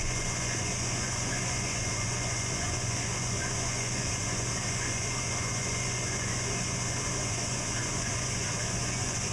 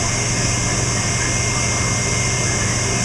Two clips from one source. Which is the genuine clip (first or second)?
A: second